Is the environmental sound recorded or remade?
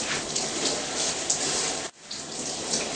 recorded